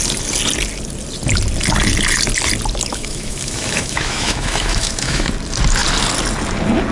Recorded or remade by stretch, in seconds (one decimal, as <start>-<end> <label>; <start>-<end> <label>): 0.0-2.9 recorded; 2.9-5.3 remade; 5.3-6.9 recorded